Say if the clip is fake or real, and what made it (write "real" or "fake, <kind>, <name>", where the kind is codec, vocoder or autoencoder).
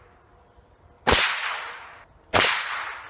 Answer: real